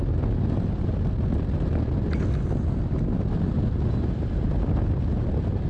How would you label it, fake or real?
real